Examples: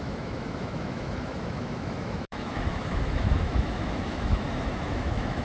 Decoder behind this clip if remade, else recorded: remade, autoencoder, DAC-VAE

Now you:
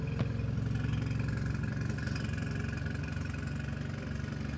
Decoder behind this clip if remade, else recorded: recorded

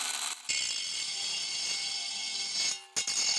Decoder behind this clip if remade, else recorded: recorded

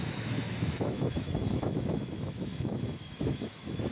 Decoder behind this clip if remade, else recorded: remade, autoencoder, DAC-VAE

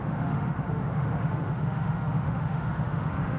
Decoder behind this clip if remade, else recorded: remade, autoencoder, DAC-VAE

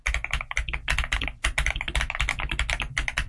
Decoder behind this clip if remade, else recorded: recorded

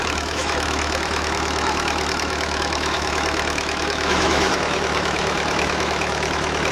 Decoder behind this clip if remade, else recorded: remade, autoencoder, DAC-VAE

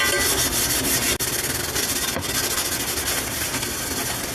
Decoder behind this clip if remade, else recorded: recorded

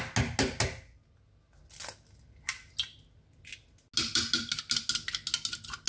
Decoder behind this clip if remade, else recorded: recorded